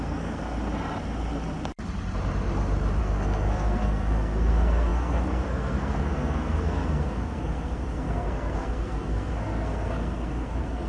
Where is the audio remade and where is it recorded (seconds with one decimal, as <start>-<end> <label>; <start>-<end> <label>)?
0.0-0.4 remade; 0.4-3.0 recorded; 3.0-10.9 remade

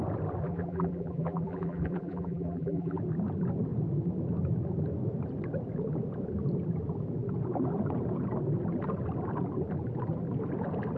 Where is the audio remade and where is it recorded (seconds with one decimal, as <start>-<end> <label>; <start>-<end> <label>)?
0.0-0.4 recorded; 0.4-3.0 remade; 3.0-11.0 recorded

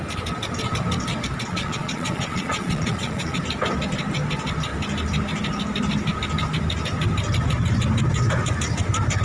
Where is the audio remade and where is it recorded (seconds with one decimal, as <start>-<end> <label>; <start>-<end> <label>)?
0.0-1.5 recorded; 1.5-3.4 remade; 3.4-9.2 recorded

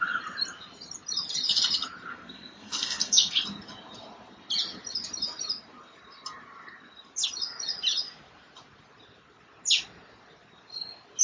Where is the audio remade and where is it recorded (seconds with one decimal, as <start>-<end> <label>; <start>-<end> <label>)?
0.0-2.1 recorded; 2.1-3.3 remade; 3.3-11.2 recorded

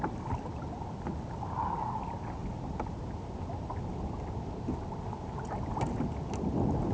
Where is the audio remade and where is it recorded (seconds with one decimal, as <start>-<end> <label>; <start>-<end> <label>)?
0.0-6.9 recorded

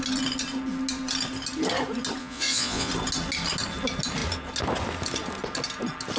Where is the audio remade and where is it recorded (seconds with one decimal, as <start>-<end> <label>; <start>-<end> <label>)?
0.0-2.2 recorded; 2.2-2.9 remade; 2.9-6.2 recorded